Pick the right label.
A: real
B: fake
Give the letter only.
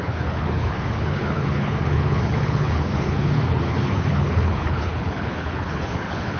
B